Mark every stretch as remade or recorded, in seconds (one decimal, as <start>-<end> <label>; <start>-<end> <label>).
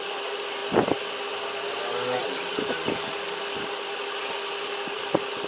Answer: 0.0-5.5 recorded